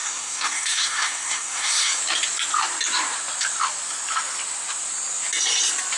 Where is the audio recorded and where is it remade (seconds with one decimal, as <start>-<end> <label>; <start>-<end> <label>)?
0.0-2.0 remade; 2.0-6.0 recorded